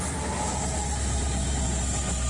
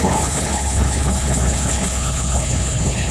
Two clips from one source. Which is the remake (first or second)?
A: second